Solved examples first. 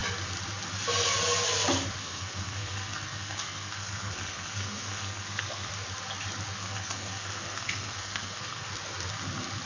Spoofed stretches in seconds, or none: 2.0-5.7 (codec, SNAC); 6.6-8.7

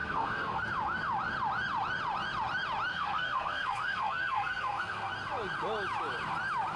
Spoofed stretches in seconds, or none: 0.0-0.6 (codec, SNAC); 2.9-5.1

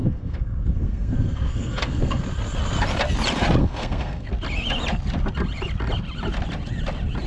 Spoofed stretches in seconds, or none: 0.0-2.2 (codec, SNAC); 3.6-4.3